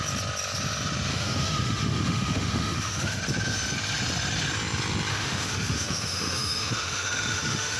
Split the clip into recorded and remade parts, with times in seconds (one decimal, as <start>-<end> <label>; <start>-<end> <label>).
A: 0.0-1.1 recorded; 1.1-3.2 remade; 3.2-5.1 recorded; 5.1-7.8 remade